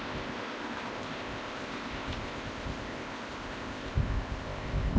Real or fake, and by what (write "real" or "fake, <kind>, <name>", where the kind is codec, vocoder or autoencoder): fake, codec, ZipCodec